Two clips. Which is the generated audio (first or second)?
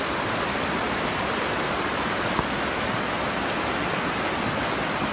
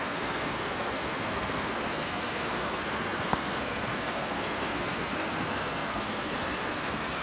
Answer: second